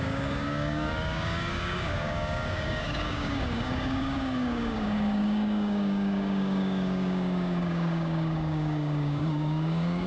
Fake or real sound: fake